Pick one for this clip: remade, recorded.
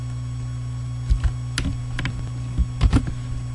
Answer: recorded